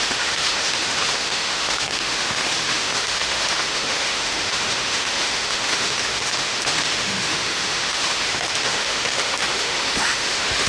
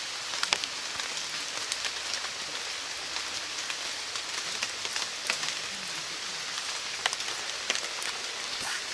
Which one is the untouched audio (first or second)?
second